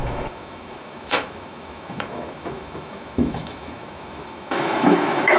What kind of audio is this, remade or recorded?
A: remade